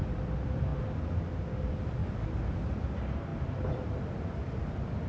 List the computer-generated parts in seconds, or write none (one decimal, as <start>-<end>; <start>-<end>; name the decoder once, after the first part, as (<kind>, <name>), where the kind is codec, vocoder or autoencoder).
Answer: 0.0-0.7 (vocoder, BigVGAN v2); 1.6-2.0; 2.6-5.1